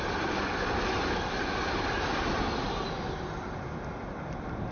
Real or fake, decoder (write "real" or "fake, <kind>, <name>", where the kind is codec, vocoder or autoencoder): real